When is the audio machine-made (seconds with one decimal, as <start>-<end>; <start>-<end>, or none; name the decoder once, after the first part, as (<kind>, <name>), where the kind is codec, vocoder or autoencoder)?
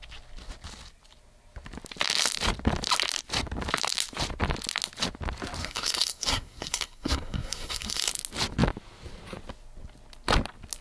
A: 5.6-8.1 (codec, SNAC)